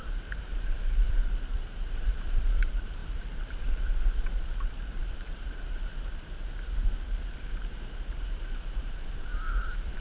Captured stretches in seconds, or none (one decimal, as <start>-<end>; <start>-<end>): none